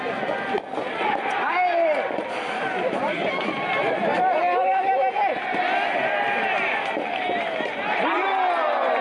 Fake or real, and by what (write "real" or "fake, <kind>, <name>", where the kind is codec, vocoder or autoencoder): real